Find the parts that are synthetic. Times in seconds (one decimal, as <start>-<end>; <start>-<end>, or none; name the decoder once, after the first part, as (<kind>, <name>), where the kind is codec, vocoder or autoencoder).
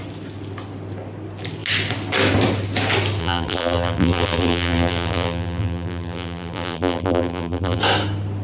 3.2-7.8 (vocoder, BigVGAN v2)